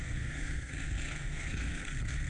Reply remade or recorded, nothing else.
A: remade